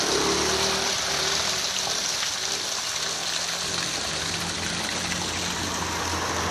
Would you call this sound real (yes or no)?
yes